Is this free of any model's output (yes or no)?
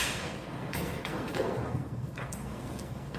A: no